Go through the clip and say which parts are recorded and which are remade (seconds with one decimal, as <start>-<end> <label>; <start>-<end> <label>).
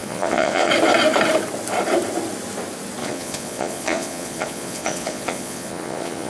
0.0-0.7 remade; 0.7-3.0 recorded; 3.0-6.3 remade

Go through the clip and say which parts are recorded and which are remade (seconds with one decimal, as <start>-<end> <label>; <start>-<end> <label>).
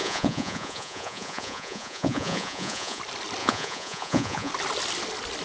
0.0-3.0 remade; 3.0-3.4 recorded; 3.4-4.5 remade; 4.5-5.4 recorded